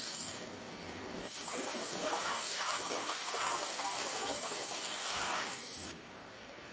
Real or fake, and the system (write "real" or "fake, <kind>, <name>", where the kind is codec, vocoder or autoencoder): fake, codec, DAC